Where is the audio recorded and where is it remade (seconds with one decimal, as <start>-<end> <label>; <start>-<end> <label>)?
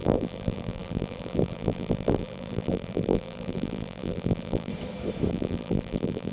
0.0-4.7 remade; 4.7-5.3 recorded; 5.3-6.3 remade